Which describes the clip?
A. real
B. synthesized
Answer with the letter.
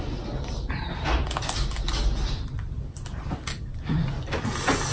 A